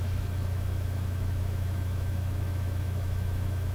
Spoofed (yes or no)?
yes